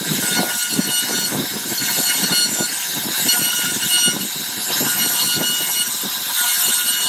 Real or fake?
real